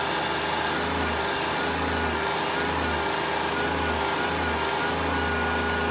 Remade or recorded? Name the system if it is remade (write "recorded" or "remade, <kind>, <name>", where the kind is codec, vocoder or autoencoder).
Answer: recorded